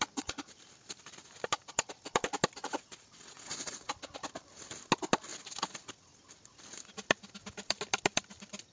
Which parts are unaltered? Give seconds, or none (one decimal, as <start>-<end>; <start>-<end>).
0.0-2.6; 3.9-8.7